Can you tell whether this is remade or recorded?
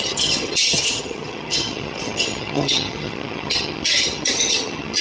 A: remade